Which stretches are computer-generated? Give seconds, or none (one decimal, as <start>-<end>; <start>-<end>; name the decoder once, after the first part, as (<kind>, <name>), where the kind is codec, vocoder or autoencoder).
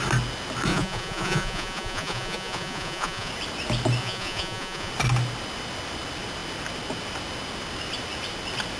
0.7-3.3 (vocoder, Vocos); 4.0-4.9